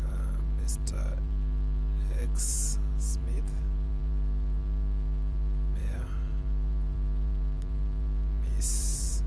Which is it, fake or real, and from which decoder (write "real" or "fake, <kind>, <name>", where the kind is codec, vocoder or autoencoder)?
fake, vocoder, BigVGAN v2